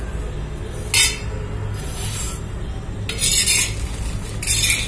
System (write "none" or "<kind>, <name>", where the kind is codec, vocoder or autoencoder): none